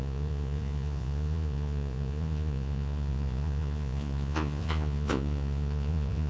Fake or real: fake